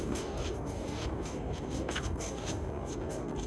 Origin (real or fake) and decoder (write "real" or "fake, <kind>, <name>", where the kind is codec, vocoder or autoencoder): fake, codec, DAC